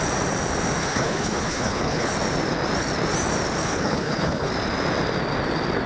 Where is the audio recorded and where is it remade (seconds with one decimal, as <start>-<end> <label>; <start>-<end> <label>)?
0.0-0.8 recorded; 0.8-2.1 remade; 2.1-3.6 recorded; 3.6-4.5 remade; 4.5-5.9 recorded

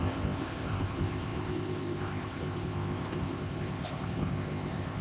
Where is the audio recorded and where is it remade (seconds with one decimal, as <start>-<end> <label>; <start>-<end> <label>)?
0.0-5.0 remade

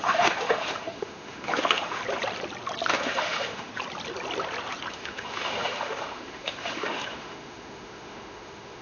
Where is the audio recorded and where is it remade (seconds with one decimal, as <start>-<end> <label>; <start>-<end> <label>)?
0.0-2.0 remade; 2.0-2.9 recorded; 2.9-3.7 remade; 3.7-4.9 recorded; 4.9-8.8 remade

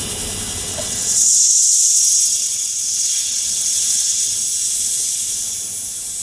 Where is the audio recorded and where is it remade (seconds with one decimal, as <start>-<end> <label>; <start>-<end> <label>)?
0.0-0.7 recorded; 0.7-4.4 remade; 4.4-6.2 recorded

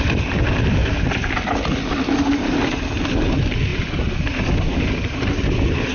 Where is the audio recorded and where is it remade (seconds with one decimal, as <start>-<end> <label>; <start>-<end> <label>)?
0.0-5.9 recorded

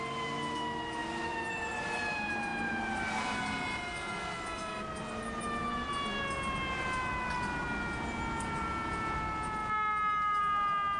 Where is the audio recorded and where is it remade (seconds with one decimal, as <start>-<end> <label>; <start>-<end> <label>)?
0.0-1.0 recorded; 1.0-1.6 remade; 1.6-11.0 recorded

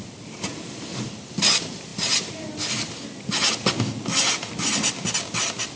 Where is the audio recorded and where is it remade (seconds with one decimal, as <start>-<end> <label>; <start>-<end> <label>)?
0.0-5.8 recorded

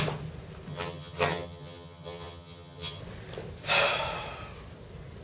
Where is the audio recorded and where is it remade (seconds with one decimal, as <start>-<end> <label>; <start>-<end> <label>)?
0.0-0.7 recorded; 0.7-3.0 remade; 3.0-5.2 recorded